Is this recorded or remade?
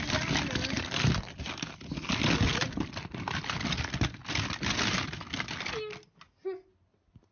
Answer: recorded